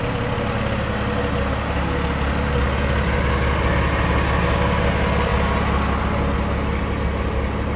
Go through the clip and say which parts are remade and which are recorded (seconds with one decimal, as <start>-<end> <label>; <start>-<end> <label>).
0.0-7.8 recorded